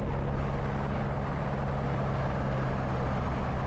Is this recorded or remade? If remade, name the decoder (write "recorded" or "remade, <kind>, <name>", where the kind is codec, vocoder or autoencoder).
recorded